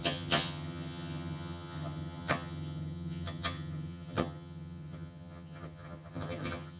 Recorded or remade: remade